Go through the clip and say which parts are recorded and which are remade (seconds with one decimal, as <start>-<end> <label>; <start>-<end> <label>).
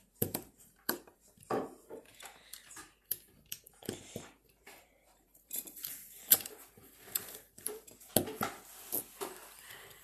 0.0-8.1 remade; 8.1-9.6 recorded; 9.6-10.0 remade